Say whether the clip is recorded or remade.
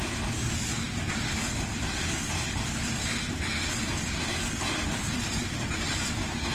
recorded